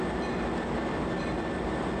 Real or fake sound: real